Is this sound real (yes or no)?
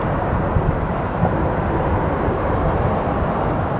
no